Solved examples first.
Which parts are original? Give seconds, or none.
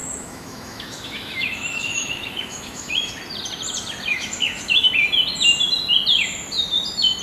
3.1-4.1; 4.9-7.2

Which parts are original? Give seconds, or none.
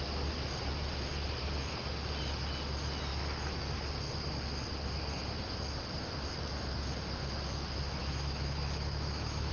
0.0-8.0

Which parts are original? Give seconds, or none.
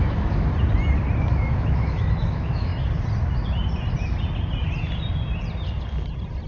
0.5-1.2; 2.7-6.5